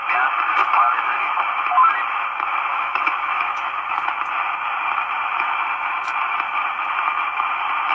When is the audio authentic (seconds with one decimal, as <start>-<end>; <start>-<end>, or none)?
0.0-0.6; 1.3-2.7; 3.7-7.9